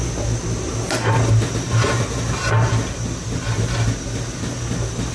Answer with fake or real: real